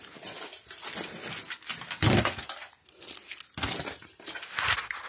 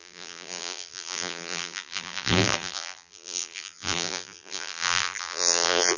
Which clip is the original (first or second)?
first